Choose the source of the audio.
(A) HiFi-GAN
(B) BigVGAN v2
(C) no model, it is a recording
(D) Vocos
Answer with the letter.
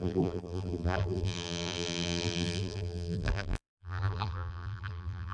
B